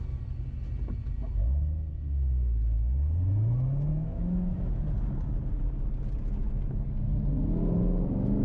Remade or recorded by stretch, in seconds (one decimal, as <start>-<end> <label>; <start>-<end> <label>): 0.0-3.9 recorded; 3.9-4.8 remade; 4.8-8.4 recorded